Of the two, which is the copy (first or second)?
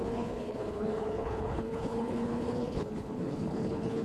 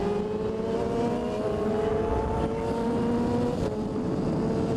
first